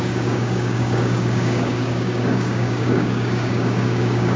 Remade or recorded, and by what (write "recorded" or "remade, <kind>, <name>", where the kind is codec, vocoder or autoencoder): remade, codec, DAC